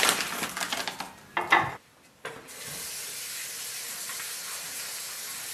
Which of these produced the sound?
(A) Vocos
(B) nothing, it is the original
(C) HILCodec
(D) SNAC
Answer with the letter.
B